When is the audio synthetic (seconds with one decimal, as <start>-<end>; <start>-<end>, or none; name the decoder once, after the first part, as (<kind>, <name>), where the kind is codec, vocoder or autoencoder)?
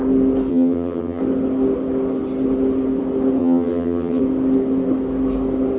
0.5-1.2 (vocoder, HiFi-GAN); 3.4-4.2